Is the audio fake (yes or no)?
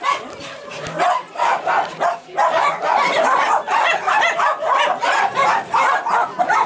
no